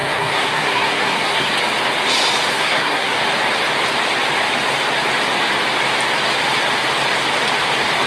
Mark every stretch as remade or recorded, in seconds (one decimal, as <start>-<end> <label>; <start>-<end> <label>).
0.0-1.5 remade; 1.5-2.5 recorded; 2.5-3.2 remade; 3.2-8.1 recorded

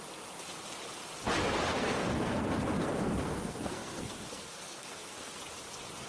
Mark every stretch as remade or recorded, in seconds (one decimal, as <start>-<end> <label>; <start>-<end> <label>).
0.0-1.7 recorded; 1.7-5.4 remade; 5.4-6.1 recorded

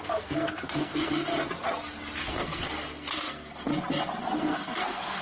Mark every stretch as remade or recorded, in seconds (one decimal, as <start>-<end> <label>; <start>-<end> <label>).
0.0-1.3 remade; 1.3-2.2 recorded; 2.2-3.7 remade; 3.7-4.2 recorded; 4.2-5.2 remade

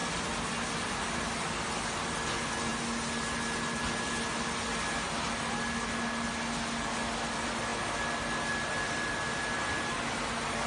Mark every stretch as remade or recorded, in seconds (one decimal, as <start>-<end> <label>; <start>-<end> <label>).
0.0-10.7 recorded

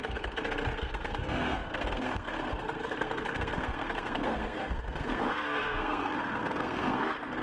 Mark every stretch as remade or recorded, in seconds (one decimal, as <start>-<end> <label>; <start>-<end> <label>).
0.0-7.4 remade

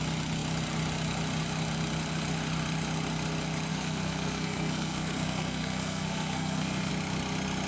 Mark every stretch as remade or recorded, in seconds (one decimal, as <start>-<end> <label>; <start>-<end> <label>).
0.0-3.7 recorded; 3.7-6.9 remade; 6.9-7.7 recorded

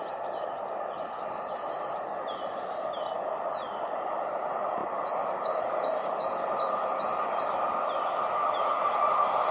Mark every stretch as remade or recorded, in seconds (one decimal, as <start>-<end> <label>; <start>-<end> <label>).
0.0-9.5 recorded

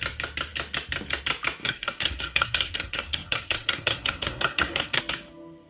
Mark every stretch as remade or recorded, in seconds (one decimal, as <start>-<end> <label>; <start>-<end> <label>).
0.0-1.6 recorded; 1.6-5.0 remade; 5.0-5.7 recorded